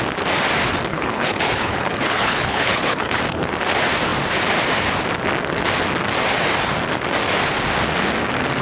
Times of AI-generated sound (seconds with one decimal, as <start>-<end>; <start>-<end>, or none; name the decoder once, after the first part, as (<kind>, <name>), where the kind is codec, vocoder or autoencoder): 0.9-3.2 (codec, HILCodec)